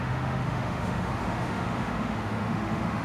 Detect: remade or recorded remade